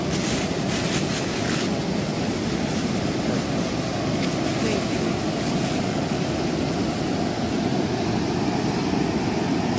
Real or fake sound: real